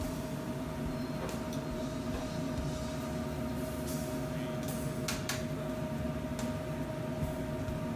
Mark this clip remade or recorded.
recorded